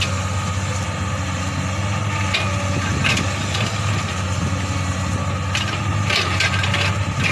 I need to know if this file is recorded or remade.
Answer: recorded